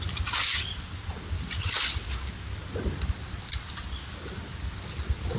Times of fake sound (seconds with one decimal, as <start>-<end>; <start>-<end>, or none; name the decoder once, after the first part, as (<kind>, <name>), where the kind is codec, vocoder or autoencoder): none